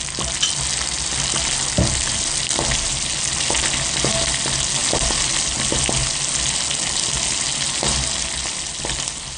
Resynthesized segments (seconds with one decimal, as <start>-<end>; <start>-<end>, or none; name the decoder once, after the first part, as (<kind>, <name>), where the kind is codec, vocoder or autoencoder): none